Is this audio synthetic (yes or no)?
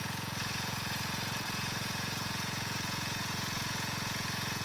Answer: yes